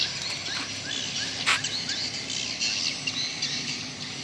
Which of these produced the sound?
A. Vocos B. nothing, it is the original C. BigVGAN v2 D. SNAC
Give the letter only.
B